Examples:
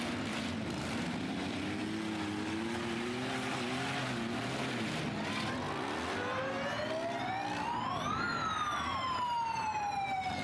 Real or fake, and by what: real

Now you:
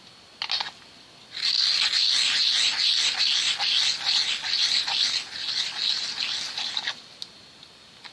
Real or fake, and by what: real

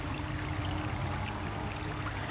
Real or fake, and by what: real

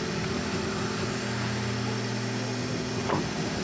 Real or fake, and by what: real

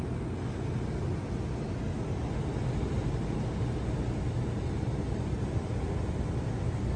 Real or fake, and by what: real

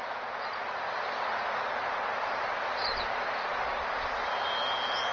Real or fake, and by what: real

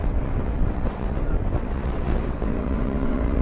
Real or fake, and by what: fake, vocoder, WaveNeXt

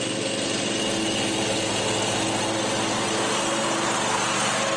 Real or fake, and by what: real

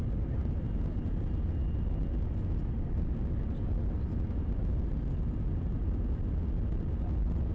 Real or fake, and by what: real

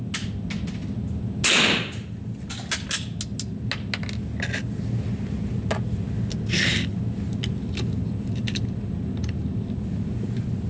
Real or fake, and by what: real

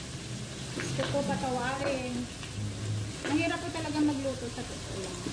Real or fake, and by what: real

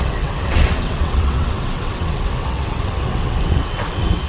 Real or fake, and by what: fake, vocoder, WaveNeXt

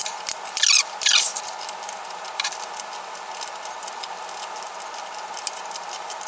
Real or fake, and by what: real